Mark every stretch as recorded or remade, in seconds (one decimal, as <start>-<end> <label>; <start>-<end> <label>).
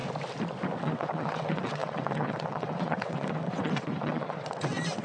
0.0-0.8 recorded; 0.8-5.0 remade